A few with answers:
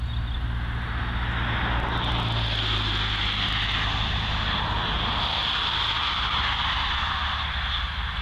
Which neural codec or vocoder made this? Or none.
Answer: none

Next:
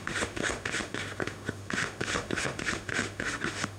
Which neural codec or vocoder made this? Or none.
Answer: autoencoder, DAC-VAE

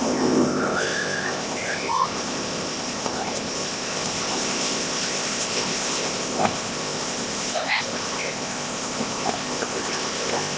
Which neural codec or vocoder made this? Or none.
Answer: codec, ZipCodec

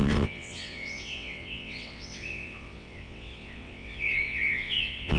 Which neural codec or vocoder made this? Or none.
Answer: vocoder, WaveNeXt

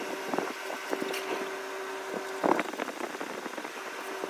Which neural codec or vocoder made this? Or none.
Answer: none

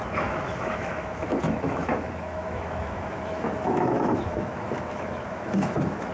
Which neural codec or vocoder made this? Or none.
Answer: autoencoder, DAC-VAE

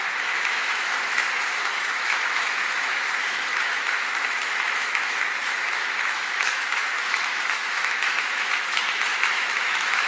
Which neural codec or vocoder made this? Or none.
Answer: autoencoder, DAC-VAE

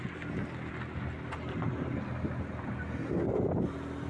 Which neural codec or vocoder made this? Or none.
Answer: none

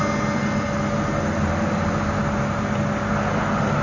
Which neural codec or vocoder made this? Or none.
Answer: none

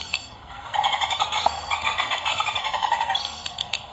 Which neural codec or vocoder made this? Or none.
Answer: codec, SNAC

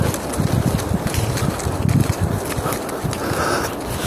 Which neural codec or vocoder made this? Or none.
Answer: none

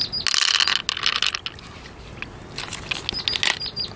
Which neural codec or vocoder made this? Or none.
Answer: none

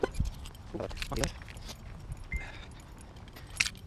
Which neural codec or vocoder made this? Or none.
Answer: none